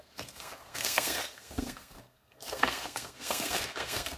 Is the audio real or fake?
fake